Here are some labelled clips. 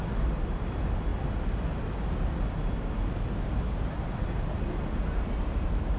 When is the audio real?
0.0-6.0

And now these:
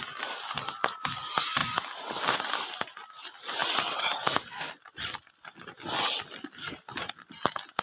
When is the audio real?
0.0-1.6; 2.4-3.6; 4.2-7.8

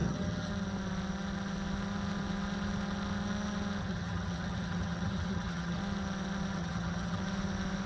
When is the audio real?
0.5-3.8; 5.8-6.6; 7.2-7.9

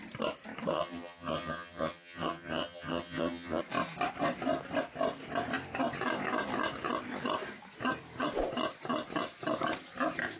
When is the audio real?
0.0-0.7; 3.6-10.4

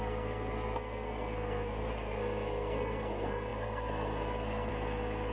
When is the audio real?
none

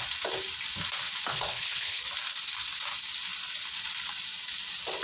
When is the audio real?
0.0-1.3; 2.0-5.0

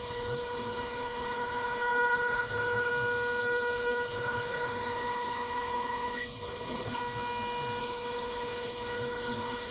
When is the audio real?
2.9-3.4; 7.0-7.8